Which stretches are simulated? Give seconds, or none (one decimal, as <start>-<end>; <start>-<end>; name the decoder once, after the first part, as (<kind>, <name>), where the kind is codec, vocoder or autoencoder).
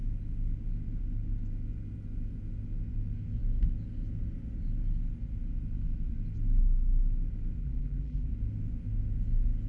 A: 7.6-8.3 (vocoder, BigVGAN v2)